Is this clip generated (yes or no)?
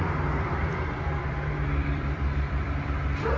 yes